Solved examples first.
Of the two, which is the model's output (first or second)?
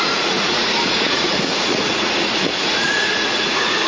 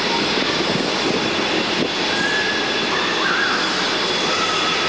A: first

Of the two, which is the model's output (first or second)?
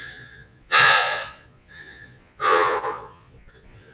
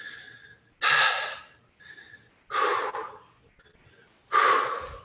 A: first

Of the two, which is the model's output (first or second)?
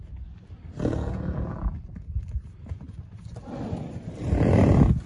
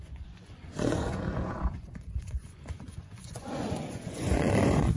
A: second